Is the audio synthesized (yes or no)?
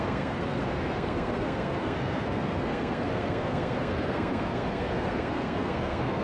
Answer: yes